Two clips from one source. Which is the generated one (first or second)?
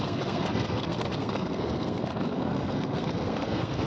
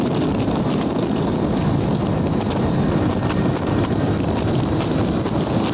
first